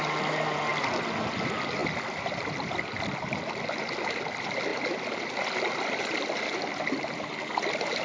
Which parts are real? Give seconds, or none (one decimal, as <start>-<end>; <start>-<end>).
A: 0.0-8.0